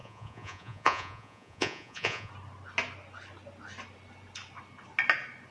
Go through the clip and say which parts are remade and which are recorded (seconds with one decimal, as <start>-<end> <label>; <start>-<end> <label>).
0.0-2.3 remade; 2.3-5.5 recorded